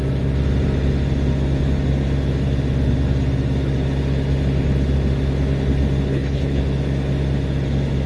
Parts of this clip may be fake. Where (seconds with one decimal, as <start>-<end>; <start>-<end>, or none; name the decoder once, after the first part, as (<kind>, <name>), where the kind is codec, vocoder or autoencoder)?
6.1-6.6 (codec, HILCodec)